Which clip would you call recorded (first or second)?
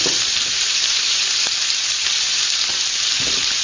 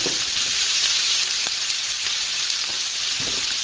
first